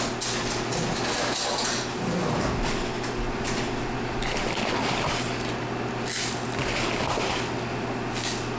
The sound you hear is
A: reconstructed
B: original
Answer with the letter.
B